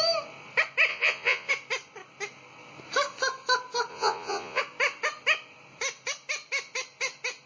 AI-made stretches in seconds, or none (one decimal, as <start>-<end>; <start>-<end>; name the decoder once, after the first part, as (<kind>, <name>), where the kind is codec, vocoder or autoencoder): 0.9-1.5 (vocoder, Vocos); 3.9-4.6